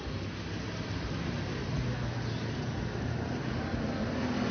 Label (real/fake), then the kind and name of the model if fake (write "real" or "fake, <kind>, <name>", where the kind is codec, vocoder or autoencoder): real